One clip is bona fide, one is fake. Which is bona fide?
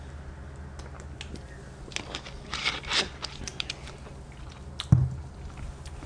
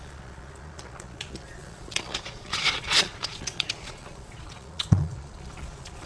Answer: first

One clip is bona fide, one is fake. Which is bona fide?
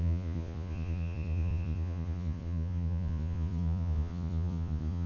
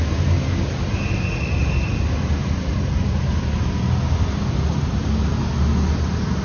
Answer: second